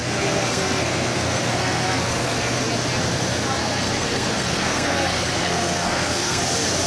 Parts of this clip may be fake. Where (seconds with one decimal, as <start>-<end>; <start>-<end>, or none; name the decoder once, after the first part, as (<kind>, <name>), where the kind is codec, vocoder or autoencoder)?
0.0-2.6 (codec, SNAC); 3.6-6.4